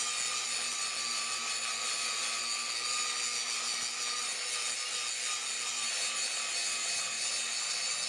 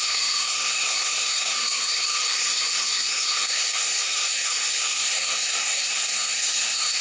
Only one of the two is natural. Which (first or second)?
first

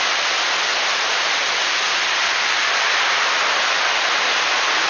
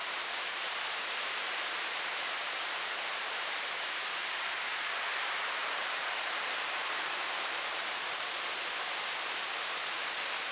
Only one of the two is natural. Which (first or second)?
first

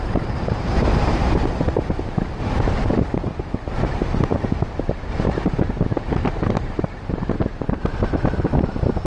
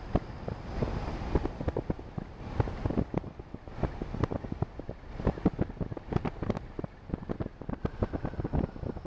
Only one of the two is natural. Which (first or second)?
second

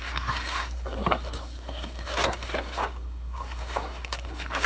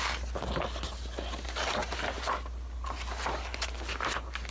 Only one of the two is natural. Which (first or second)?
second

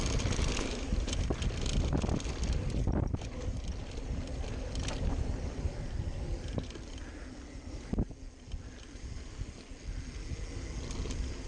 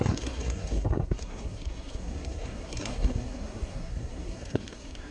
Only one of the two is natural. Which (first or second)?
first